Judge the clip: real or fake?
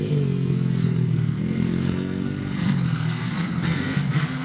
fake